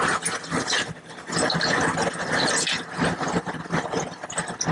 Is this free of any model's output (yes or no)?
yes